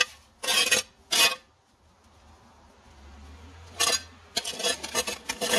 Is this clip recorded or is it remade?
recorded